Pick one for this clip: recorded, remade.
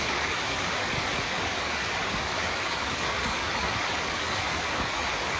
remade